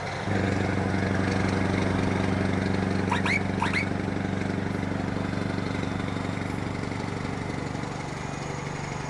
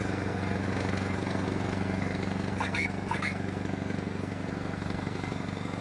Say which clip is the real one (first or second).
first